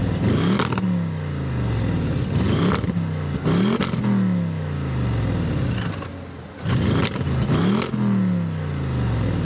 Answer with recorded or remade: recorded